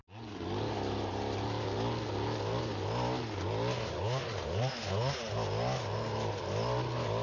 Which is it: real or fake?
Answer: real